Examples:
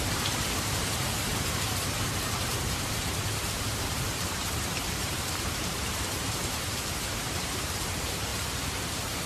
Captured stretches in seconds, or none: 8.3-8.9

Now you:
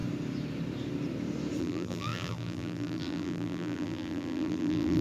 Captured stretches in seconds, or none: 0.0-1.6

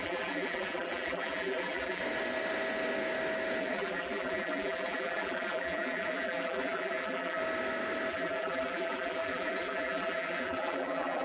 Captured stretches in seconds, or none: 2.0-3.6; 7.4-8.1

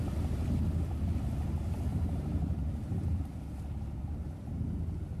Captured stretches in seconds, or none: 0.0-1.9; 4.8-5.2

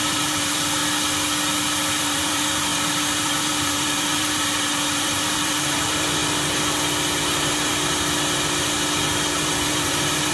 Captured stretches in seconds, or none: 0.8-2.0; 6.2-9.3